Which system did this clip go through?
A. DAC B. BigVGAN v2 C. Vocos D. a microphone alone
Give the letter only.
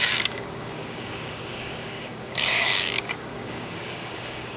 A